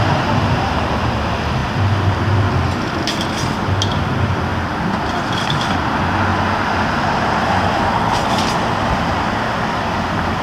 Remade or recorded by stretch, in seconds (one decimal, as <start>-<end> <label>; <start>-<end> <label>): 0.0-1.6 remade; 1.6-4.1 recorded; 4.1-4.5 remade; 4.5-5.4 recorded; 5.4-10.4 remade